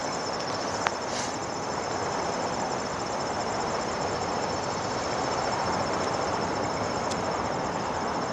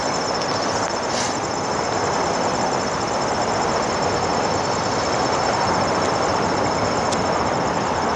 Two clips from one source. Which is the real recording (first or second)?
second